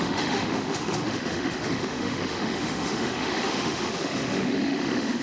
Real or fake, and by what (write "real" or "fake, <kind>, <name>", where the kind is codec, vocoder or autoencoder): fake, autoencoder, DAC-VAE